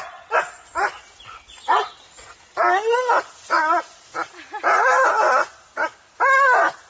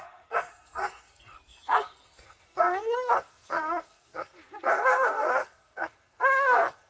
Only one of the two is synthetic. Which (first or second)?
second